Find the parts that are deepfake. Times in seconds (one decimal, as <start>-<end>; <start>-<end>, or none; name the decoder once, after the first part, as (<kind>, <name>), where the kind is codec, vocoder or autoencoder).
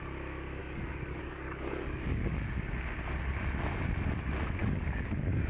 0.6-2.5 (codec, DAC); 4.6-5.5